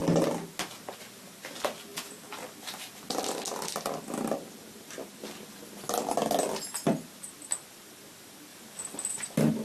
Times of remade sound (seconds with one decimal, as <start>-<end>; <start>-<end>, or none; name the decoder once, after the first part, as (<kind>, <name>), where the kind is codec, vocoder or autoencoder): none

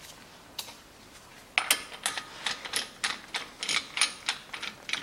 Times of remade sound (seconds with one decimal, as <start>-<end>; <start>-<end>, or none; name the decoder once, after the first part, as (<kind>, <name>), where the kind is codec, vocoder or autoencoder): 0.0-1.3 (vocoder, BigVGAN v2); 4.3-5.0

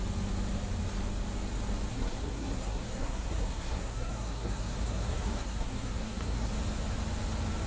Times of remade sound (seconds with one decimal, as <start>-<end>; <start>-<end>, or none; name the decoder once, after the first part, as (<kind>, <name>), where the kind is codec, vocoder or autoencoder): 1.9-6.5 (codec, SNAC)

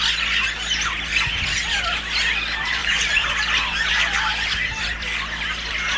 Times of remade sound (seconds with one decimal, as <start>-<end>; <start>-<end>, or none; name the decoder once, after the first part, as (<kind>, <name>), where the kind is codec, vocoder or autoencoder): 2.8-3.3 (vocoder, BigVGAN v2)

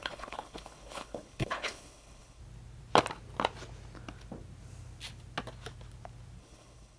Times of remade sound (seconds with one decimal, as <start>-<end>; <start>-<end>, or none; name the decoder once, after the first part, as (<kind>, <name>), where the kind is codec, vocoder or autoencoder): 0.0-2.4 (codec, HILCodec); 6.4-7.0

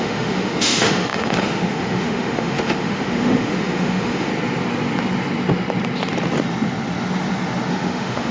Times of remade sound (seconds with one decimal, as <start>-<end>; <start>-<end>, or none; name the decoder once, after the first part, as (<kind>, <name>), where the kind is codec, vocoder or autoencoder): 0.0-4.3 (autoencoder, DAC-VAE); 7.7-8.3

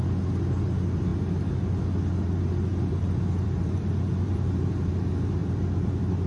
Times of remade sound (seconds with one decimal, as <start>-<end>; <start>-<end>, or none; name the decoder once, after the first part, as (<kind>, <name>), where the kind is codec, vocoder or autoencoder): 2.7-4.9 (vocoder, BigVGAN v2); 5.4-6.3